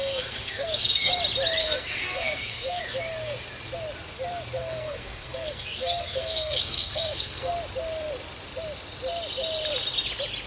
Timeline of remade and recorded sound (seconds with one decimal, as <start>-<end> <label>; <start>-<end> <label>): 0.0-1.1 remade; 1.1-1.6 recorded; 1.6-2.8 remade; 2.8-4.6 recorded; 4.6-7.5 remade; 7.5-10.5 recorded